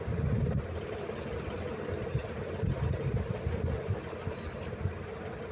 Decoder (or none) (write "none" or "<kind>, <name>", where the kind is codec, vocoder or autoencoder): none